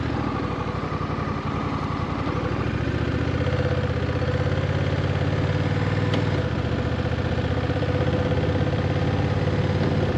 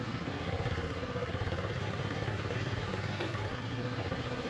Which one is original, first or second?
first